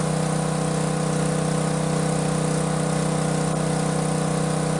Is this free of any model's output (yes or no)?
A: yes